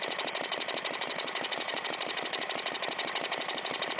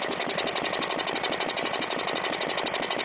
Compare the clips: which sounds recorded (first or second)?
second